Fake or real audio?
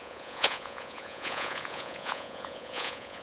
fake